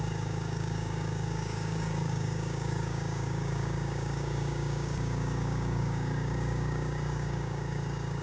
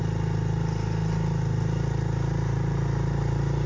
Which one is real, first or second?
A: second